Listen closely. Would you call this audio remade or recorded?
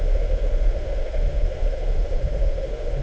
remade